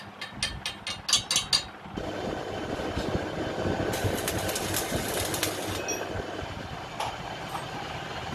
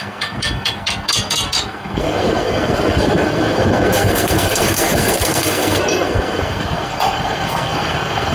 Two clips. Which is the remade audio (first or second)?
second